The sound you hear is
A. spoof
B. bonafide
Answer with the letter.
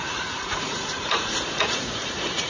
A